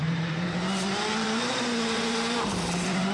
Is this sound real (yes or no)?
no